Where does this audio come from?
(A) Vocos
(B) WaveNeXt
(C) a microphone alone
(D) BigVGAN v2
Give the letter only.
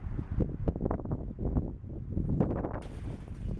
C